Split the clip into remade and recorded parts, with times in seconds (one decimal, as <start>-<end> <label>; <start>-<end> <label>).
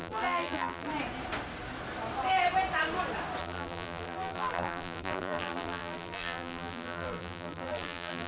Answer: 0.0-0.9 remade; 0.9-3.4 recorded; 3.4-8.3 remade